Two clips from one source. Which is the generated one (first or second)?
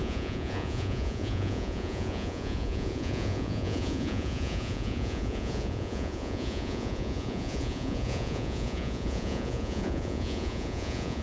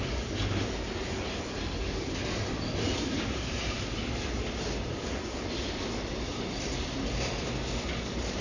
first